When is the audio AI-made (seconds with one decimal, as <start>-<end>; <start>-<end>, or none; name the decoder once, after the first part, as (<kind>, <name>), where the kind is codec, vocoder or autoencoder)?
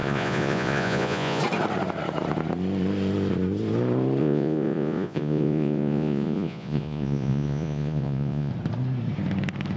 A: 0.0-1.4 (vocoder, Vocos); 4.2-8.5